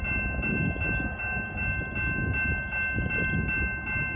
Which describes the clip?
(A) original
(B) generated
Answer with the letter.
A